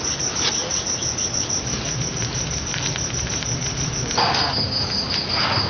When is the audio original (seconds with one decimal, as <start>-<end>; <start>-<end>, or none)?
0.0-5.7